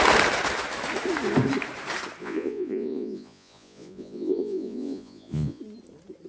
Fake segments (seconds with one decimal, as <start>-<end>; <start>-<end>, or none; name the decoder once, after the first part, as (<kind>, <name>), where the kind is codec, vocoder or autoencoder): 2.2-5.6 (vocoder, Vocos)